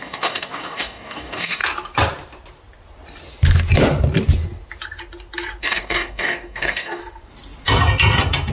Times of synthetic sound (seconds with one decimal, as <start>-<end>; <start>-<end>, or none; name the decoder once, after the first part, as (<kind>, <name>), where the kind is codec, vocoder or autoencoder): 0.0-1.6 (codec, DAC); 5.6-7.0